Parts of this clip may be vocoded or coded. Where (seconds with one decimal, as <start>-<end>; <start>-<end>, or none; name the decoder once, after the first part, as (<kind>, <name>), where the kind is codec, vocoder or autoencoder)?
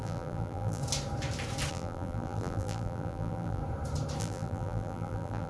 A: 0.0-0.8 (vocoder, BigVGAN v2); 1.7-3.6; 4.2-5.5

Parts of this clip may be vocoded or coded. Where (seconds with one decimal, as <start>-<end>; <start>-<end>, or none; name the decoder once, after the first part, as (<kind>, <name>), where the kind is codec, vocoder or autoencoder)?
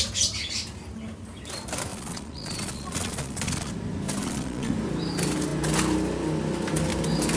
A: 1.9-3.7 (vocoder, Vocos); 4.2-4.7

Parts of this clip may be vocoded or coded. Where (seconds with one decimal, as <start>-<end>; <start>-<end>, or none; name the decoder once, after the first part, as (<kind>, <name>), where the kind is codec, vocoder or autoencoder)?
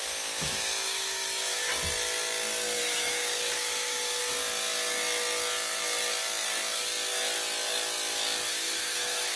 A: 0.0-1.7 (autoencoder, DAC-VAE); 2.8-4.2; 8.5-9.4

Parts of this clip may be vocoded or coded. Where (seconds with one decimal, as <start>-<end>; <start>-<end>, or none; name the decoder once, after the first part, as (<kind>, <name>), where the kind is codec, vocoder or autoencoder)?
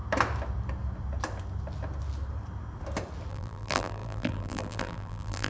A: 3.3-5.5 (vocoder, BigVGAN v2)